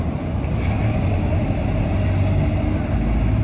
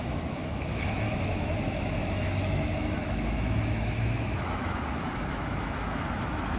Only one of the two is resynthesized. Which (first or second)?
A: second